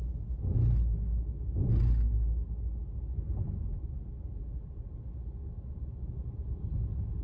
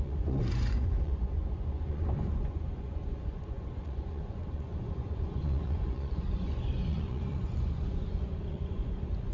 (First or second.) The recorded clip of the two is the first